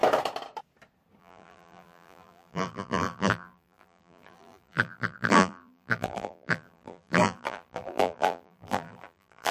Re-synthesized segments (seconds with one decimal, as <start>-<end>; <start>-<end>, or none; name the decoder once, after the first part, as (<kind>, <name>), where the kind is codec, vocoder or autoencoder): 1.2-9.5 (vocoder, BigVGAN v2)